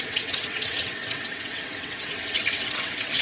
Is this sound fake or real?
fake